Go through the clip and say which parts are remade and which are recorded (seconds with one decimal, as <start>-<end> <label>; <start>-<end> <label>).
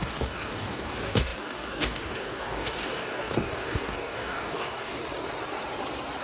0.0-5.0 remade; 5.0-6.2 recorded